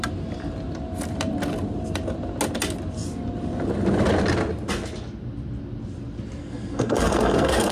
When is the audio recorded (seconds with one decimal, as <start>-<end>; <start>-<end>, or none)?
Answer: 0.0-6.4